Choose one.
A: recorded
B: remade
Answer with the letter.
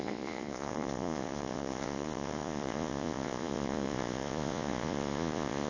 B